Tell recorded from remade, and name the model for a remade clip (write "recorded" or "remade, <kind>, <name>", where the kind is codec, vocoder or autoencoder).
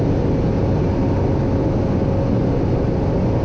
recorded